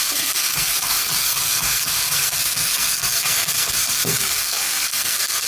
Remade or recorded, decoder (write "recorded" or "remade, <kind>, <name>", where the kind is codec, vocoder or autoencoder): remade, codec, SNAC